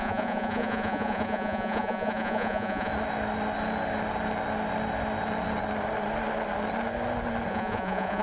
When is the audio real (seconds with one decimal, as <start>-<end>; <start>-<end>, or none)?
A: 2.9-7.5